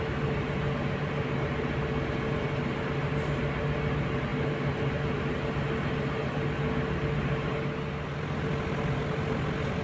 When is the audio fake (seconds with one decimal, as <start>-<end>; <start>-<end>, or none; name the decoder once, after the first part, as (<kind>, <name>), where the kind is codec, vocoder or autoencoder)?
none